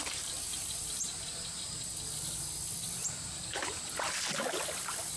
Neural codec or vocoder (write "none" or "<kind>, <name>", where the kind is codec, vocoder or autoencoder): none